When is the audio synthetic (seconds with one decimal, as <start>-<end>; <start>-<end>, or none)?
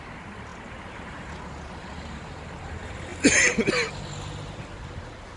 none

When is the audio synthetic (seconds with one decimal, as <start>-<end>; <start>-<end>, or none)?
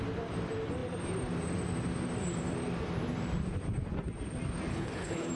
4.7-5.3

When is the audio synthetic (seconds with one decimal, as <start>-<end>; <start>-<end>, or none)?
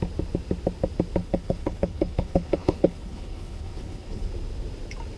1.2-4.3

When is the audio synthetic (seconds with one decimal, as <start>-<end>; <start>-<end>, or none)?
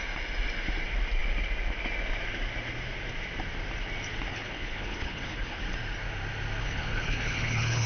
4.3-5.6; 6.6-7.9